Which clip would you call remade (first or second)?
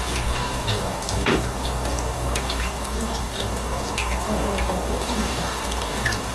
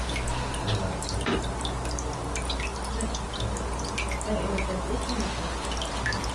first